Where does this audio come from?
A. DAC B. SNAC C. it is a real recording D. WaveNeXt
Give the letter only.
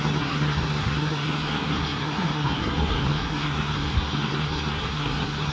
B